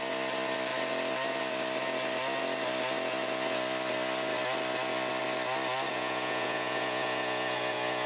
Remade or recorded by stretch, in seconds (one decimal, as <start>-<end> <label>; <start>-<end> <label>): 0.0-5.9 recorded; 5.9-8.1 remade